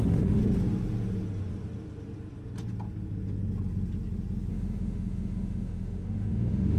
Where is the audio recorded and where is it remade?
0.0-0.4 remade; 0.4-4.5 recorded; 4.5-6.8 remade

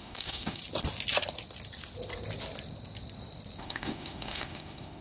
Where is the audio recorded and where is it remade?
0.0-0.6 remade; 0.6-3.6 recorded; 3.6-5.0 remade

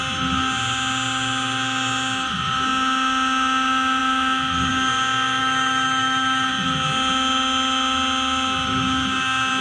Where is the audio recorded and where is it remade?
0.0-5.4 recorded; 5.4-6.5 remade; 6.5-9.6 recorded

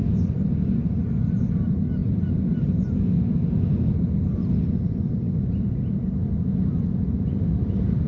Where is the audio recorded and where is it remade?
0.0-8.1 recorded

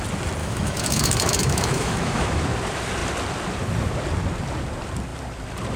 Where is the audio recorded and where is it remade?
0.0-0.4 recorded; 0.4-2.4 remade; 2.4-5.8 recorded

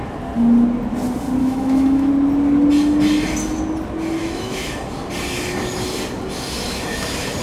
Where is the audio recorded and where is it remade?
0.0-1.4 recorded; 1.4-2.1 remade; 2.1-4.2 recorded; 4.2-4.7 remade; 4.7-7.4 recorded

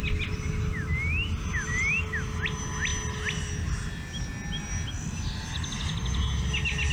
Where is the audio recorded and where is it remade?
0.0-6.9 recorded